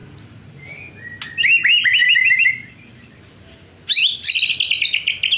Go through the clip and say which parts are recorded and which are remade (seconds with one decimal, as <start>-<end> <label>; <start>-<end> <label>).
0.0-0.9 remade; 0.9-2.0 recorded; 2.0-3.0 remade; 3.0-3.9 recorded; 3.9-4.5 remade; 4.5-5.4 recorded